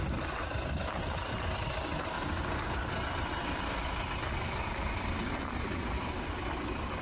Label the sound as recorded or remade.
recorded